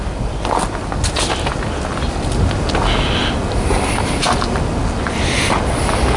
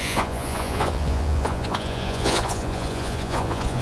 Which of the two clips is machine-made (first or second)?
second